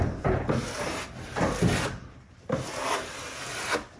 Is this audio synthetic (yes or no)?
no